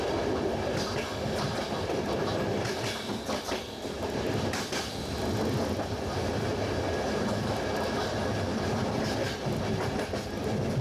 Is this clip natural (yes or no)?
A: yes